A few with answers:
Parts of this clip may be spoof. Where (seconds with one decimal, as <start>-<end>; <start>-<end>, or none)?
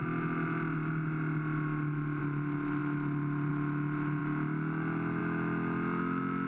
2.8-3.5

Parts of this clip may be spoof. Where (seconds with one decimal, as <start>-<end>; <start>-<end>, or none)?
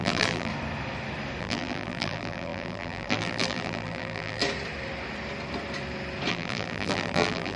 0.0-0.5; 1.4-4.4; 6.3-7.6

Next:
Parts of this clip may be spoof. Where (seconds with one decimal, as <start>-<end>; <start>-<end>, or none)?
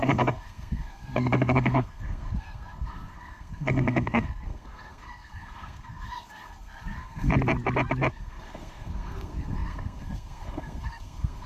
0.0-7.3; 8.1-11.5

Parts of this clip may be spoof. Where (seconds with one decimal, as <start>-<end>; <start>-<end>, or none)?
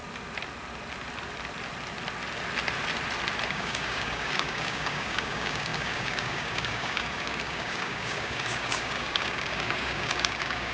3.5-10.7